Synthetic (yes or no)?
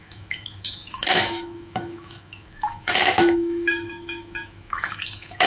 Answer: yes